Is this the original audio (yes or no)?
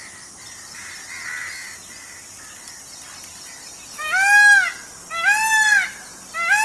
yes